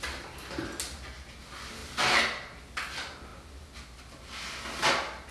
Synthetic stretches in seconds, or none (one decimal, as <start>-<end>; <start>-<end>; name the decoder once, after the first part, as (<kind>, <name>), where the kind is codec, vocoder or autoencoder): none